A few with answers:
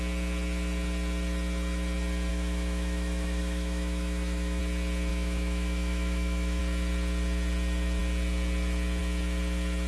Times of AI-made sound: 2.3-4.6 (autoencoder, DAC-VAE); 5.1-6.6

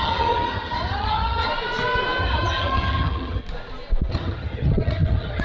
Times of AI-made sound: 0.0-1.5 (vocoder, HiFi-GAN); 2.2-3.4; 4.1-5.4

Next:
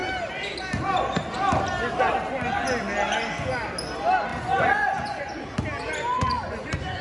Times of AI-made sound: 4.3-5.4 (vocoder, Vocos); 6.1-7.0

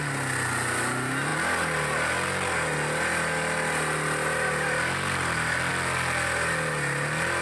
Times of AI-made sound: none

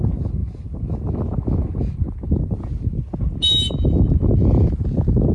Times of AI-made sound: none

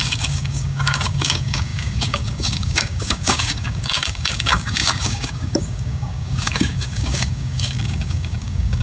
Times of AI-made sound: 0.0-8.8 (codec, DAC)

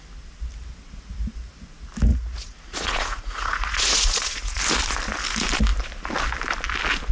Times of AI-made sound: 2.1-4.6 (vocoder, Vocos)